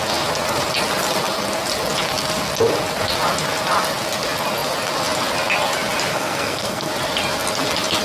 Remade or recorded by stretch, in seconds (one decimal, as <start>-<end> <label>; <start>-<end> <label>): 0.0-6.1 recorded; 6.1-6.9 remade; 6.9-8.0 recorded